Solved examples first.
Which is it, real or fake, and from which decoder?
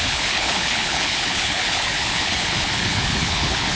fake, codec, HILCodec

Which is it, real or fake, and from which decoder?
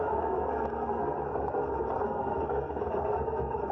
fake, codec, SNAC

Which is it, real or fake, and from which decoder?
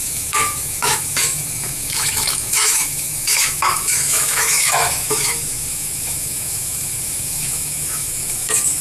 fake, autoencoder, DAC-VAE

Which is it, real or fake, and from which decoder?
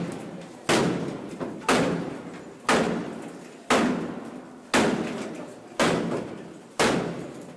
real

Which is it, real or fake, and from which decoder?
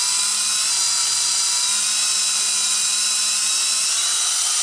real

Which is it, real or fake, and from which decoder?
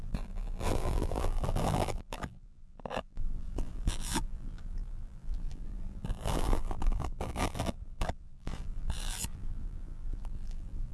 fake, vocoder, BigVGAN v2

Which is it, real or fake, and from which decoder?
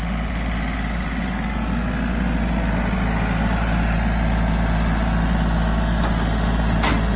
real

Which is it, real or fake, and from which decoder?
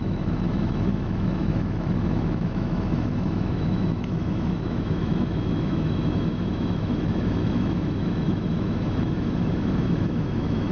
fake, autoencoder, DAC-VAE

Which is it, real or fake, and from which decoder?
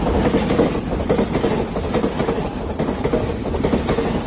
real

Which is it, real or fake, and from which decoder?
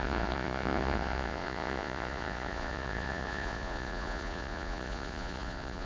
fake, vocoder, Vocos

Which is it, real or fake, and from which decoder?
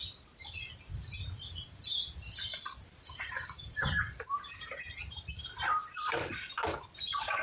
fake, vocoder, BigVGAN v2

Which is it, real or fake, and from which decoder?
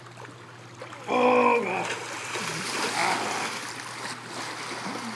real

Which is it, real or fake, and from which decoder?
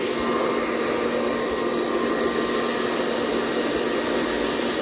real